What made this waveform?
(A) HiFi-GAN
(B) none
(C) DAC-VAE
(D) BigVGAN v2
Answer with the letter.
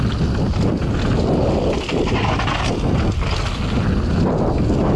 B